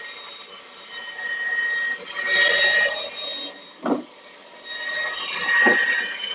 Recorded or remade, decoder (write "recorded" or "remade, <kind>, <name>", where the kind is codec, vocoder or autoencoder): recorded